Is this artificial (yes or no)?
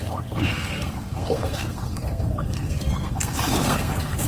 yes